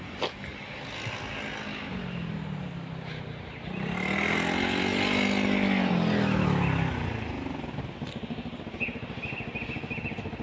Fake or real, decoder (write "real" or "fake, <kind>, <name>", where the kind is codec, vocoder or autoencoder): real